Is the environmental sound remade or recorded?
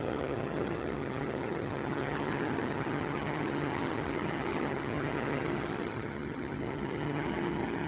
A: remade